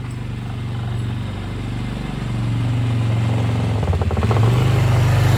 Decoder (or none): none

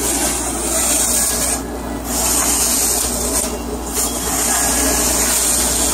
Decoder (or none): none